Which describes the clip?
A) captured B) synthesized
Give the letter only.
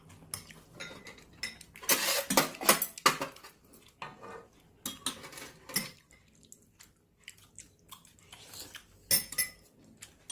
A